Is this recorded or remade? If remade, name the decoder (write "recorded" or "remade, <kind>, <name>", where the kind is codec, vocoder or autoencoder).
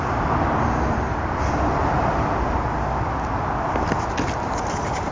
recorded